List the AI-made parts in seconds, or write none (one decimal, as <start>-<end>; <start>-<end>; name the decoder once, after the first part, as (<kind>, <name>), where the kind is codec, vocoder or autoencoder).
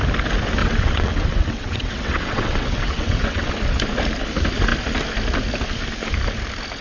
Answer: 0.6-3.5 (vocoder, WaveNeXt)